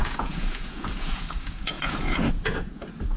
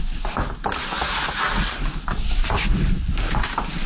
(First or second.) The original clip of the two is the second